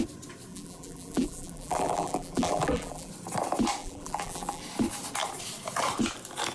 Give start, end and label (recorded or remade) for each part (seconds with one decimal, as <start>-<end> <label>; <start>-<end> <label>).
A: 0.0-0.5 recorded; 0.5-3.1 remade; 3.1-3.8 recorded; 3.8-4.6 remade; 4.6-6.5 recorded